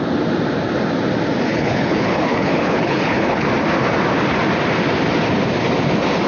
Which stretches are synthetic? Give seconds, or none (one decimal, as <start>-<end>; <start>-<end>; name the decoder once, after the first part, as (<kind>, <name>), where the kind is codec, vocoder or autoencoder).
1.5-3.5 (codec, HILCodec)